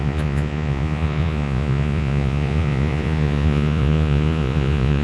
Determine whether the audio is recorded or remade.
remade